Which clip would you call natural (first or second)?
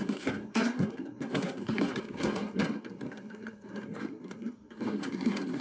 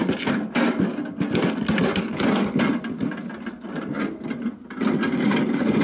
second